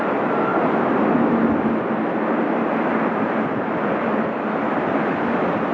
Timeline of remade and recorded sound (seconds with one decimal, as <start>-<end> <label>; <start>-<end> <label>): 0.0-5.7 recorded

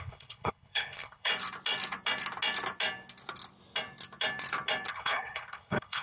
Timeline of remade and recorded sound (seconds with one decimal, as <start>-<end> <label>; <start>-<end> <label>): 0.0-1.3 remade; 1.3-4.9 recorded; 4.9-6.0 remade

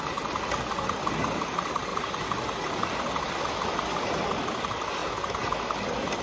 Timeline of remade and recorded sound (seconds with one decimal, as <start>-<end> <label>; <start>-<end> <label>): 0.0-6.2 recorded

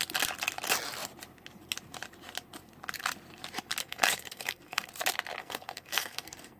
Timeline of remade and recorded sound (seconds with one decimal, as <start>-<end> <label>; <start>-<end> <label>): 0.0-3.8 recorded; 3.8-4.9 remade; 4.9-5.4 recorded; 5.4-6.6 remade

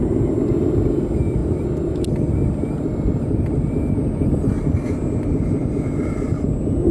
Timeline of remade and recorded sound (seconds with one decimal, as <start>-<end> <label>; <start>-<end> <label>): 0.0-6.9 recorded

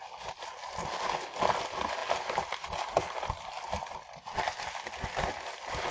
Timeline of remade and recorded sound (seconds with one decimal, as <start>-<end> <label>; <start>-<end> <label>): 0.0-5.9 recorded

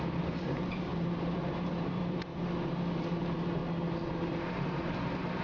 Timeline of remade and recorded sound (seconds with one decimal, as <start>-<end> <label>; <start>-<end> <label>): 0.0-2.3 remade; 2.3-3.2 recorded; 3.2-3.6 remade; 3.6-4.1 recorded; 4.1-5.4 remade